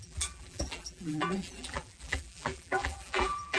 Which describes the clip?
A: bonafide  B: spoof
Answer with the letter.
B